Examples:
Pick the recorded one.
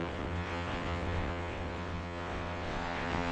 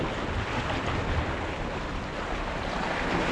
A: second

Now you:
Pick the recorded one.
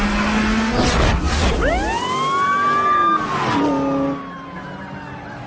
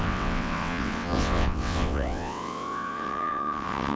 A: first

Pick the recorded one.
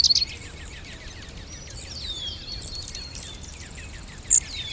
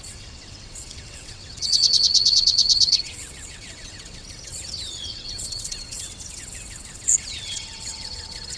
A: first